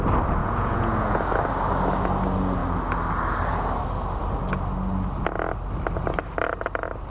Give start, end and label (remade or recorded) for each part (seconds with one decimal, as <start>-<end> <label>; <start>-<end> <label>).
0.0-0.4 recorded; 0.4-1.3 remade; 1.3-7.1 recorded